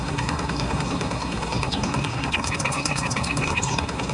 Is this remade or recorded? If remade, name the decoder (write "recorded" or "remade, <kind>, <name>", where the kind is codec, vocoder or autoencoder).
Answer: remade, codec, SNAC